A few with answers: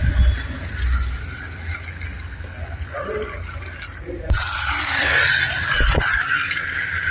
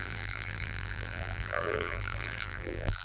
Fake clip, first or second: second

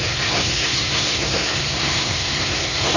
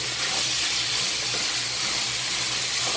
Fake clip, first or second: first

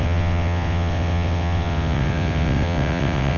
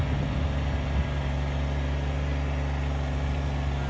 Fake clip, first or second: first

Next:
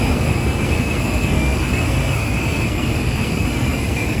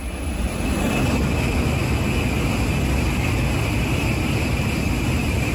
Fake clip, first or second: first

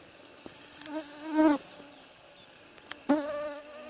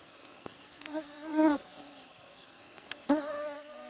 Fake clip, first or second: second